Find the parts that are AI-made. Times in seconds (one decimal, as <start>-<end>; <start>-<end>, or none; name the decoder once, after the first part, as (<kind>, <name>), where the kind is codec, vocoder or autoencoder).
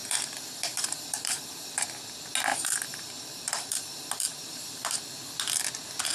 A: 0.0-1.9 (vocoder, BigVGAN v2); 2.5-5.2